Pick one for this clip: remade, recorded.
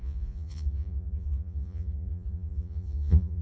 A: remade